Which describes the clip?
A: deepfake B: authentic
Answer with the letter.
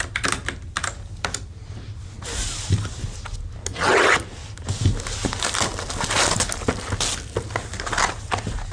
B